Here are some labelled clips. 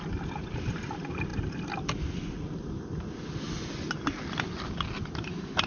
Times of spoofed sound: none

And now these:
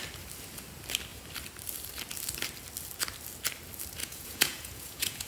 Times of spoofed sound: 4.0-5.3 (vocoder, Vocos)

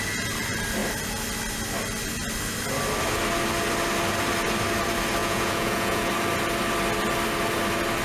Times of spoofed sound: 5.2-6.1 (vocoder, Vocos)

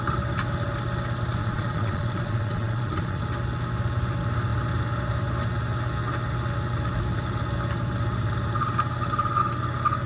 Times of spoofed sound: 1.4-3.2 (vocoder, Vocos)

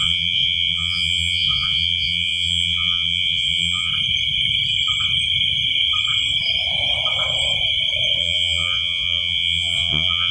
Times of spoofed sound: 0.0-3.9 (vocoder, Vocos); 8.2-10.3

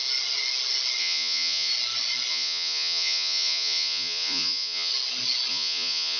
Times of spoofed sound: 1.0-1.7 (vocoder, Vocos); 2.3-4.9; 5.5-6.2